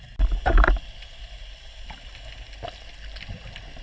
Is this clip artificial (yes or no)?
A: no